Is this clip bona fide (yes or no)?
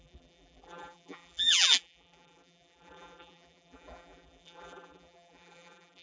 no